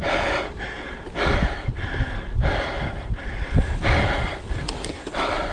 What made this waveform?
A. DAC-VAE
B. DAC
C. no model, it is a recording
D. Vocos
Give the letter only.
C